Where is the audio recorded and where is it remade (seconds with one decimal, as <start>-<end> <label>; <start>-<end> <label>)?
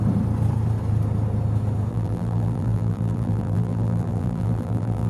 0.0-1.9 recorded; 1.9-5.1 remade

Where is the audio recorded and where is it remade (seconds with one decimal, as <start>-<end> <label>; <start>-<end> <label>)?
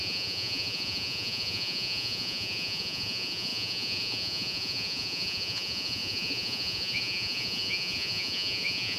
0.0-9.0 remade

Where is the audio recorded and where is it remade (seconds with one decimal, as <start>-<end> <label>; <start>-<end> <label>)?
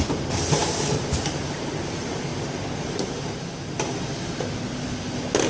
0.0-5.5 recorded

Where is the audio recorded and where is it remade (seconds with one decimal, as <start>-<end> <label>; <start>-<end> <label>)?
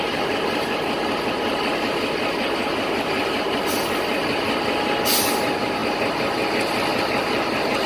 0.0-7.9 recorded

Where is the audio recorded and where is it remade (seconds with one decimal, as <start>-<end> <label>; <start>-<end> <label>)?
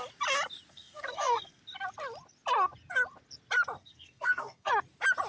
0.0-0.7 recorded; 0.7-1.6 remade; 1.6-3.8 recorded; 3.8-4.7 remade; 4.7-5.3 recorded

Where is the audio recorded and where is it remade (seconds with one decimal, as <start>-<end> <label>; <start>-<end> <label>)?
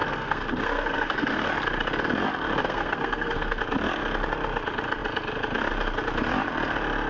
0.0-1.5 remade; 1.5-2.6 recorded; 2.6-3.6 remade; 3.6-7.1 recorded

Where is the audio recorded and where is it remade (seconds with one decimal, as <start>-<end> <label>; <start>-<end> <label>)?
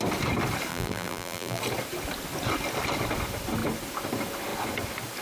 0.0-0.7 recorded; 0.7-1.6 remade; 1.6-5.2 recorded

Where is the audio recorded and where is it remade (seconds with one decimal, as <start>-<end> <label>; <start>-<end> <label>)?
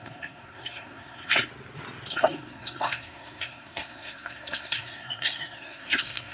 0.0-1.5 remade; 1.5-2.1 recorded; 2.1-6.3 remade